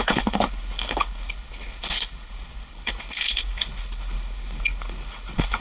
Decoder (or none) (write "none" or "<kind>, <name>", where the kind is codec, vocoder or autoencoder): codec, HILCodec